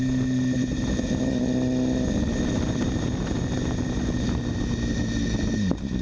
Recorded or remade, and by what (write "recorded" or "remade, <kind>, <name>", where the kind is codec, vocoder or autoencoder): recorded